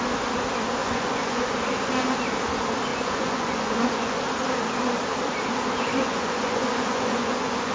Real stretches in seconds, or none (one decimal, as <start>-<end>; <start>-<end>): 0.0-0.8; 1.5-2.9; 4.2-6.0